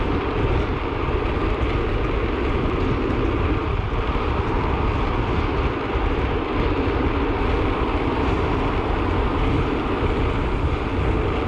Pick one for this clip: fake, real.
real